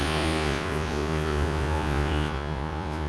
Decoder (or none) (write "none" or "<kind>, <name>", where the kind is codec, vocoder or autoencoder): vocoder, Vocos